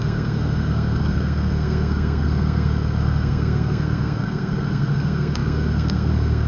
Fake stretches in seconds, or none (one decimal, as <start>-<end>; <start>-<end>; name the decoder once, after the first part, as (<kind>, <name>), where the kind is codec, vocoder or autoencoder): 0.0-6.5 (codec, SNAC)